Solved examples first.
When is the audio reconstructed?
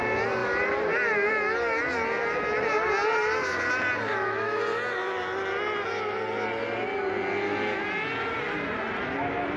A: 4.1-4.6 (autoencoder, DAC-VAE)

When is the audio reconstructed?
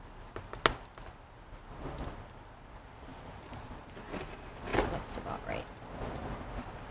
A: 3.1-3.9 (vocoder, BigVGAN v2)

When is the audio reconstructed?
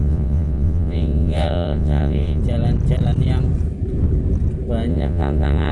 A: 0.0-2.4 (vocoder, WaveNeXt); 4.9-5.7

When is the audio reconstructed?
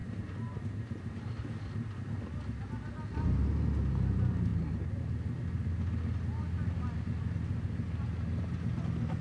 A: 0.0-1.3 (vocoder, BigVGAN v2)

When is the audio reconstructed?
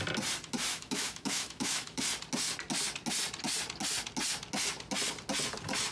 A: 0.7-2.0 (autoencoder, DAC-VAE)